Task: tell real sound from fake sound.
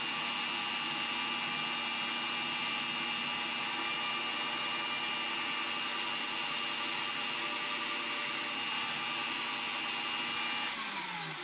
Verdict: real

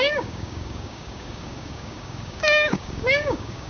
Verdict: fake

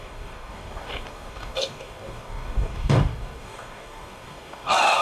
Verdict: fake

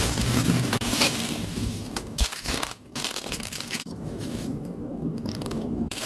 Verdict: fake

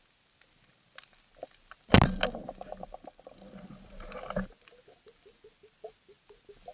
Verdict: real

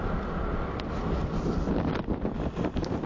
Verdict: real